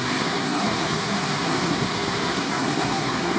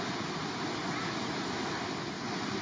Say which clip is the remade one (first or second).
first